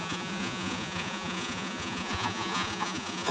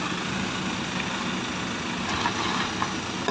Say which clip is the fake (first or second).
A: first